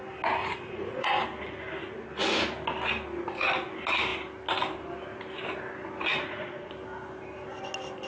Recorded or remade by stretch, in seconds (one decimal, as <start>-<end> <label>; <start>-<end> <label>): 0.0-0.4 recorded; 0.4-1.1 remade; 1.1-6.1 recorded; 6.1-6.7 remade; 6.7-8.1 recorded